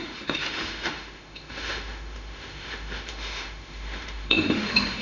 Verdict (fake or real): fake